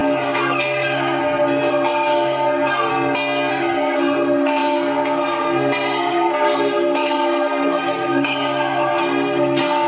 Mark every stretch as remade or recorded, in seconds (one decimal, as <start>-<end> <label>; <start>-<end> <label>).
0.0-1.2 remade; 1.2-1.7 recorded; 1.7-2.9 remade; 2.9-3.5 recorded; 3.5-9.9 remade